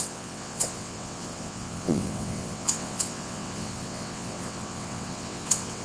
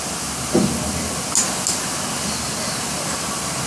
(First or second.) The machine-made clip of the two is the first